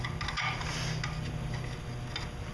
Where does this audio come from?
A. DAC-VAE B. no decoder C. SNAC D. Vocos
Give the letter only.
B